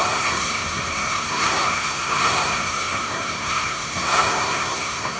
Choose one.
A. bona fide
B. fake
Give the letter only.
B